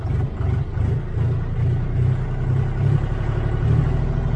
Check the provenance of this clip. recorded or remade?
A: recorded